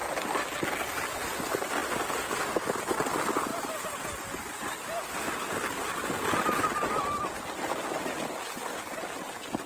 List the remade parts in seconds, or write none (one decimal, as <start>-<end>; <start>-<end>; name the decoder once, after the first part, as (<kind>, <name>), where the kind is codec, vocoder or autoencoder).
none